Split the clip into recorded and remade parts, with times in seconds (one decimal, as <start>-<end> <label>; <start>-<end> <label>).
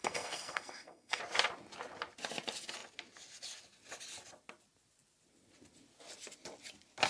0.0-1.2 remade; 1.2-7.1 recorded